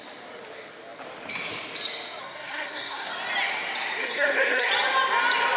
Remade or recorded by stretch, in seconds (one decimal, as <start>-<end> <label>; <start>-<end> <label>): 0.0-2.2 recorded; 2.2-3.1 remade; 3.1-4.0 recorded; 4.0-4.7 remade; 4.7-5.6 recorded